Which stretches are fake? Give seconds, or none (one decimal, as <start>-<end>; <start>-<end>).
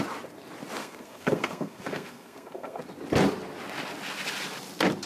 0.8-2.8